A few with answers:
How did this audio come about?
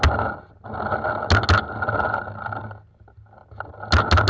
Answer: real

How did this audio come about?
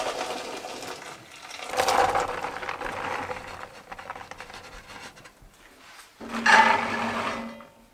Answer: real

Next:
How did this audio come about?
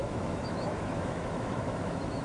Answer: fake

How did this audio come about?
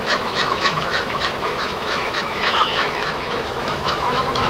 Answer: fake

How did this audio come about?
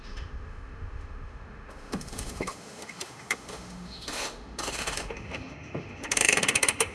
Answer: fake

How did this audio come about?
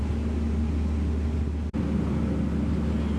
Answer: real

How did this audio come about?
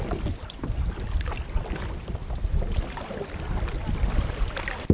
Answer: real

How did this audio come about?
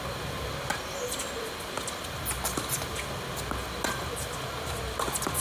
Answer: real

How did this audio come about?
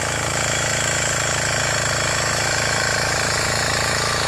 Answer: fake